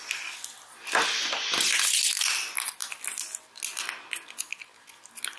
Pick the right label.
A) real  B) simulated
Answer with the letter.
A